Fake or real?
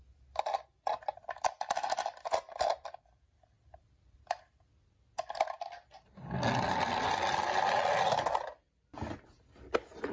real